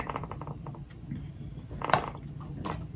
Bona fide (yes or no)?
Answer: yes